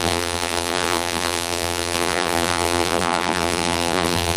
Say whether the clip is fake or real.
fake